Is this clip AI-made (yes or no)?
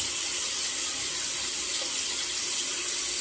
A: no